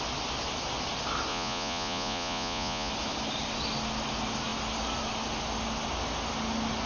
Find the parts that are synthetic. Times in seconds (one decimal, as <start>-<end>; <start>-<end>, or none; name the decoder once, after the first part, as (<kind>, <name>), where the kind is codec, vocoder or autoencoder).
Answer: 1.3-2.9 (vocoder, Vocos)

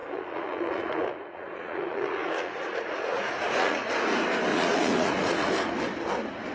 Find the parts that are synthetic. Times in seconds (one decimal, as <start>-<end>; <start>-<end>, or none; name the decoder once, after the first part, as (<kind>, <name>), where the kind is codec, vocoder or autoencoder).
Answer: 0.0-3.9 (vocoder, Vocos); 4.5-5.5